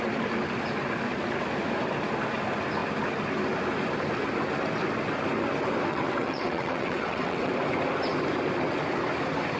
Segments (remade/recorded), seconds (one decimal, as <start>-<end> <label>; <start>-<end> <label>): 0.0-5.9 recorded; 5.9-7.5 remade; 7.5-9.6 recorded